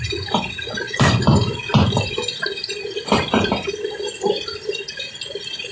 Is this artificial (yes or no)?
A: yes